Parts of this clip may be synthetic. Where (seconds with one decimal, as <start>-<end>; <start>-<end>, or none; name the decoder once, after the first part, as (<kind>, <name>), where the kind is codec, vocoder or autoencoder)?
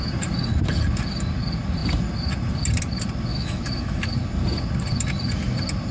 3.3-4.1 (autoencoder, DAC-VAE)